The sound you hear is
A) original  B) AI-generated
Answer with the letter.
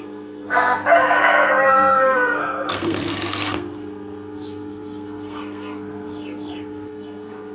B